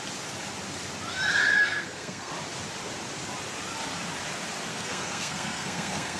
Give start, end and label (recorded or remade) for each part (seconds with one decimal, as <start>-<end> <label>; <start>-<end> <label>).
0.0-1.6 recorded; 1.6-2.3 remade; 2.3-4.7 recorded; 4.7-6.2 remade